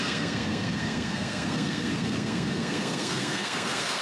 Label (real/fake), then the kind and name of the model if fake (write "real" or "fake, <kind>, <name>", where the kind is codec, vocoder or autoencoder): fake, codec, SNAC